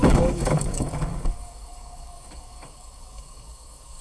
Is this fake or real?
fake